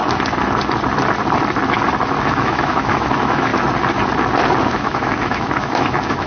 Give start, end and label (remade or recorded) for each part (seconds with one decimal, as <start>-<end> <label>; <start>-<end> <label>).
0.0-2.2 recorded; 2.2-3.5 remade; 3.5-4.7 recorded; 4.7-6.3 remade